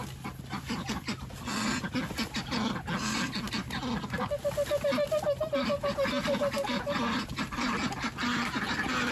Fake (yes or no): no